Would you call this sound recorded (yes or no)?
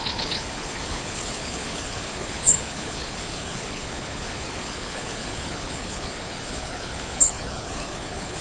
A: no